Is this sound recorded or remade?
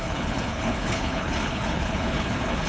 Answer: remade